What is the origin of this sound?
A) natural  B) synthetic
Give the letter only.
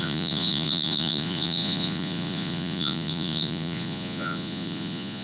B